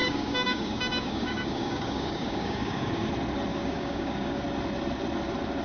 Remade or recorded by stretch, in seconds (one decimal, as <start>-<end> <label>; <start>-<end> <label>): 0.0-3.1 remade; 3.1-3.5 recorded; 3.5-4.4 remade; 4.4-5.6 recorded